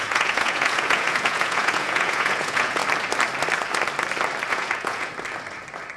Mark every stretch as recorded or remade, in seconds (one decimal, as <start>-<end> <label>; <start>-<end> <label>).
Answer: 0.0-2.8 remade; 2.8-4.5 recorded; 4.5-5.1 remade; 5.1-6.0 recorded